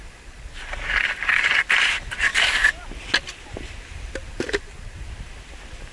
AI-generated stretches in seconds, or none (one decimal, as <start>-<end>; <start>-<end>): none